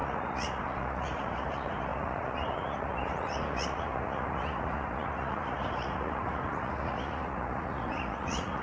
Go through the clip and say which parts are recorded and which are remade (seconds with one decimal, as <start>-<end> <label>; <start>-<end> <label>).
0.0-8.6 remade